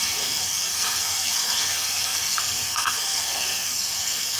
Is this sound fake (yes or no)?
yes